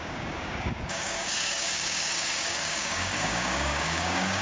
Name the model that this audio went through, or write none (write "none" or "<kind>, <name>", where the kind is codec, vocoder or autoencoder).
codec, DAC